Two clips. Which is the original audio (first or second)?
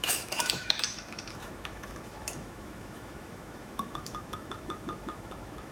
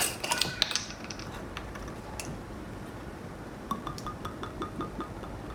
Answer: second